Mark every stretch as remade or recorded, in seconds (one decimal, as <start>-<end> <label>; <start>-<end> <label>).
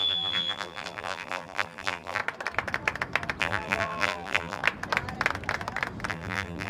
0.0-2.2 remade; 2.2-3.4 recorded; 3.4-4.6 remade; 4.6-6.1 recorded; 6.1-6.7 remade